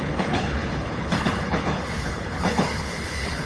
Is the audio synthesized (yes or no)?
yes